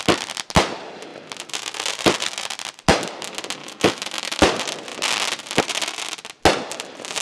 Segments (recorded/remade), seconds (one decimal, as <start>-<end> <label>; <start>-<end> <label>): 0.0-3.6 recorded; 3.6-4.4 remade; 4.4-7.2 recorded